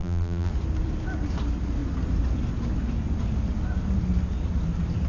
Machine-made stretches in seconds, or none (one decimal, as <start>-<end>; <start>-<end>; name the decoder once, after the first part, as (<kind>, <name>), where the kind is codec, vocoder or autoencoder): 0.0-0.5 (vocoder, BigVGAN v2)